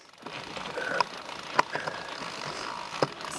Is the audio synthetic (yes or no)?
no